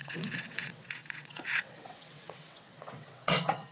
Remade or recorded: remade